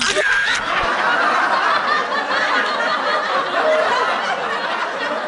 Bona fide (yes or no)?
yes